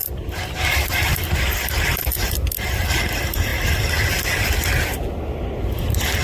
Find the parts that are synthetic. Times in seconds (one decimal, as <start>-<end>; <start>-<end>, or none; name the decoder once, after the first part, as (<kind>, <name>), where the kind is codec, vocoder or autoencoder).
none